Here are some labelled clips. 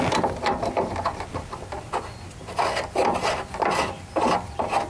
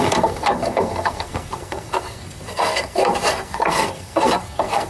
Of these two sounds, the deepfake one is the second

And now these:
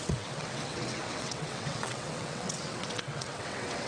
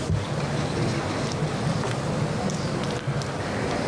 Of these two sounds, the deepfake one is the first